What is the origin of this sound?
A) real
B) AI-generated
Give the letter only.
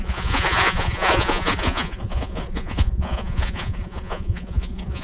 B